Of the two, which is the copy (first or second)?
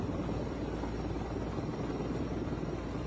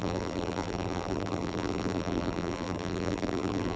second